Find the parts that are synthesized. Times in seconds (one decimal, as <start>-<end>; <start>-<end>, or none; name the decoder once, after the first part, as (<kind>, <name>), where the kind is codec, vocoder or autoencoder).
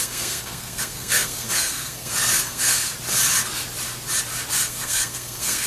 0.0-2.9 (codec, SNAC); 4.5-5.7